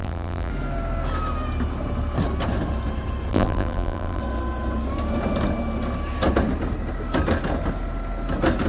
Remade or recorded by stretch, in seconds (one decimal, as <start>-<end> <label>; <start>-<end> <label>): 0.0-0.5 remade; 0.5-3.3 recorded; 3.3-4.2 remade; 4.2-8.7 recorded